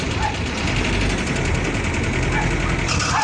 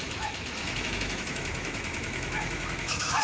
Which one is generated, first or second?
second